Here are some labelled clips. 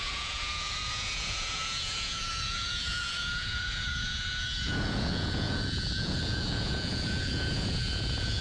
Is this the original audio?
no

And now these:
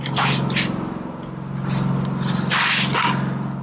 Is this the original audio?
yes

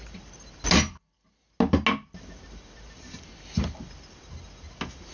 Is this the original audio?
yes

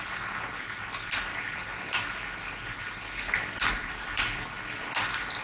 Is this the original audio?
yes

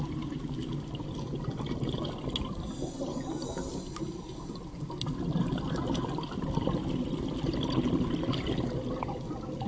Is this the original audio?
yes